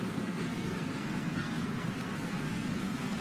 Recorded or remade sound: remade